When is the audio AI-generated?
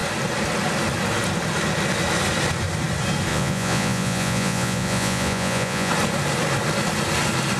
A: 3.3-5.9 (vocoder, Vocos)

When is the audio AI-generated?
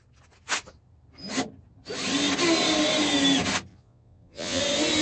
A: 3.7-4.6 (vocoder, Vocos)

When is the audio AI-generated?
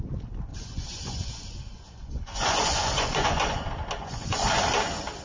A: 0.5-3.6 (vocoder, Vocos); 4.0-4.6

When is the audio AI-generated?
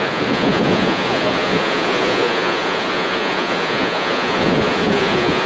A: 0.0-5.5 (vocoder, Vocos)